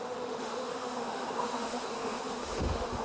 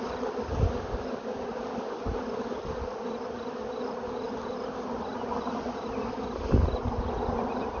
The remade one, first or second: first